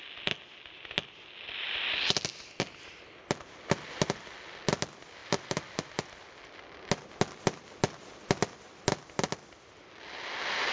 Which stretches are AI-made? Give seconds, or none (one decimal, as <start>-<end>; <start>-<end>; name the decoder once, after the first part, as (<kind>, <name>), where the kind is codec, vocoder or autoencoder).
none

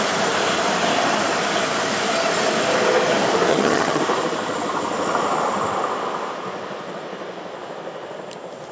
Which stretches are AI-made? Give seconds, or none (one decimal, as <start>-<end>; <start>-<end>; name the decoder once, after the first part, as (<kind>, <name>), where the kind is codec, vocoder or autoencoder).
3.5-4.0 (vocoder, HiFi-GAN)

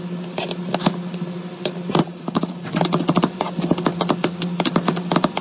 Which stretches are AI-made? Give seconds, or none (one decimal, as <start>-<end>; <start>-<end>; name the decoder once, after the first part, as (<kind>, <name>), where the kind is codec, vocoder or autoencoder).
2.0-2.8 (vocoder, Vocos)

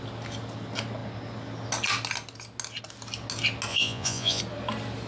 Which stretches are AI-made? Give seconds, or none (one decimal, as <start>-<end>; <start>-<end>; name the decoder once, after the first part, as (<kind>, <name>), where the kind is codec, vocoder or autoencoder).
3.7-4.4 (vocoder, Vocos)

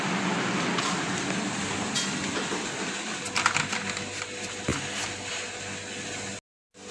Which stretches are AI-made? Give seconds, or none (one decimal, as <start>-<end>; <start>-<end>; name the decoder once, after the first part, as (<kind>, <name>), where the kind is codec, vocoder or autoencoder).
none

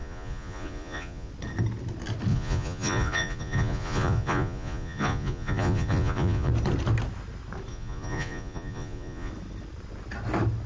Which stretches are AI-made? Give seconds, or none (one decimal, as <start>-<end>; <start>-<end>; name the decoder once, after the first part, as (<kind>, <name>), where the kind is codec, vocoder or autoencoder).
0.0-1.3 (vocoder, Vocos); 2.3-6.5; 7.7-9.3

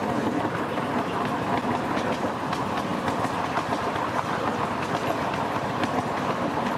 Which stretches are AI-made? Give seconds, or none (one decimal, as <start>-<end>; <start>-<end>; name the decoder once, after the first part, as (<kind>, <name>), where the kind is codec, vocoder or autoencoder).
none